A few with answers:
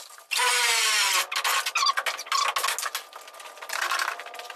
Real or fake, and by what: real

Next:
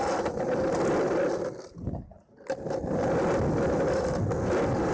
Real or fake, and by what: real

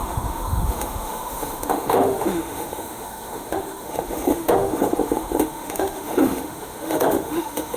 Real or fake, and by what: fake, autoencoder, DAC-VAE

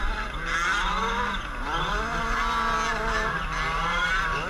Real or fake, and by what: real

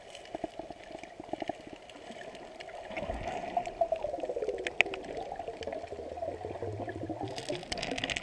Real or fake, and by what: real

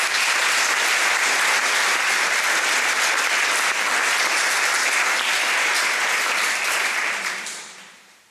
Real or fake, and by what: real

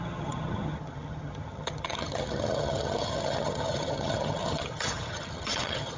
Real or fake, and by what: fake, vocoder, HiFi-GAN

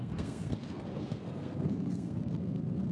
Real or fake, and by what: fake, codec, SNAC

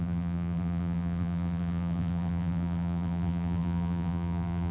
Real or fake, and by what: fake, vocoder, BigVGAN v2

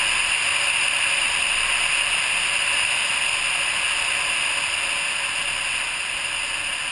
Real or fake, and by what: real